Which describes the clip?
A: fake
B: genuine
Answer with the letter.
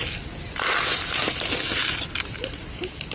B